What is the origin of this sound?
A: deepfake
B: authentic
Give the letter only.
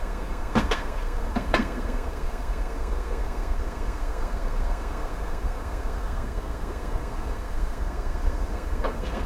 A